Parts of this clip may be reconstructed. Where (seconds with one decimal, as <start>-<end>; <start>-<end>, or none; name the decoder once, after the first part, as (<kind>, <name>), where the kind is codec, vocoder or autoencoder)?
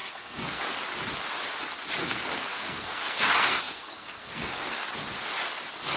0.0-0.6 (codec, SNAC); 2.0-4.8